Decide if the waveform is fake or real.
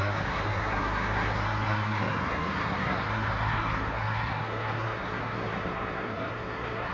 fake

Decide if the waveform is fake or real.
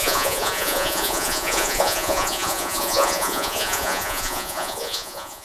fake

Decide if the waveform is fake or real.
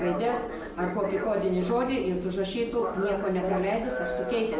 real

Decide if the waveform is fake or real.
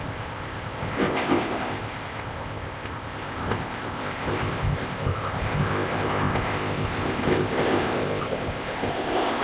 fake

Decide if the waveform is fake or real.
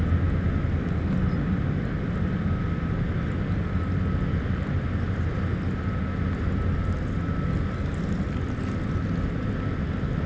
real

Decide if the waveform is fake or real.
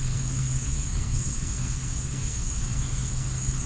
fake